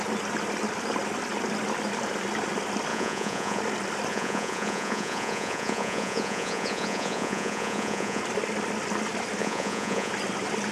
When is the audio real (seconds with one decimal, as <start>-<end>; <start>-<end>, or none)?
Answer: 0.0-2.9; 3.6-4.1; 8.2-9.4; 10.1-10.7